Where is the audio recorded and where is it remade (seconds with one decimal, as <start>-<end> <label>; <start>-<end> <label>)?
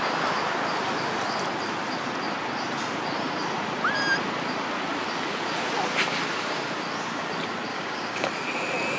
0.0-7.7 recorded; 7.7-8.3 remade; 8.3-9.0 recorded